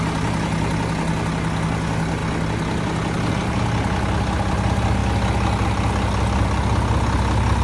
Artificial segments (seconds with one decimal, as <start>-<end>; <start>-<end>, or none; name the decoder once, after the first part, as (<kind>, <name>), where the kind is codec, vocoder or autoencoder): none